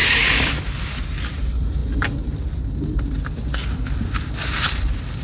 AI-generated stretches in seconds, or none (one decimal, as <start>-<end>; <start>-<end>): 0.0-0.5